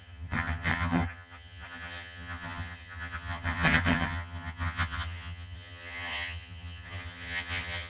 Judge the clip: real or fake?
fake